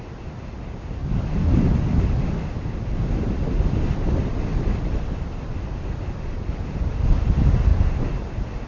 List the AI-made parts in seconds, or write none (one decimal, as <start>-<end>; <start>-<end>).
none